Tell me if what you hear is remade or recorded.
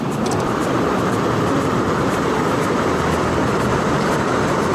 remade